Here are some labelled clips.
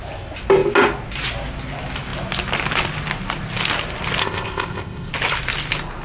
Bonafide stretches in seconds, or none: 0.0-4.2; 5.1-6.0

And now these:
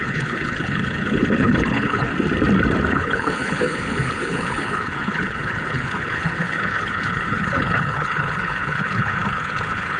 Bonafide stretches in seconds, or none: 2.1-2.9

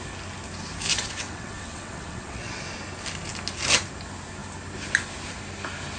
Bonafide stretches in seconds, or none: 0.0-0.9; 2.6-6.0

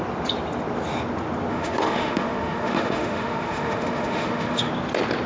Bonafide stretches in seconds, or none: 0.0-1.5; 4.7-5.3